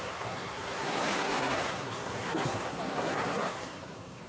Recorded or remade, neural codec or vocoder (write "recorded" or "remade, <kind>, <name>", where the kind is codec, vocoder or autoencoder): remade, codec, SNAC